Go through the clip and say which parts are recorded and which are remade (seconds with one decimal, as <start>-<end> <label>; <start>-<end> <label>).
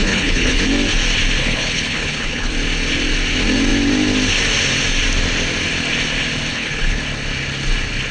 0.0-0.6 remade; 0.6-1.4 recorded; 1.4-2.5 remade; 2.5-6.5 recorded; 6.5-7.0 remade; 7.0-8.1 recorded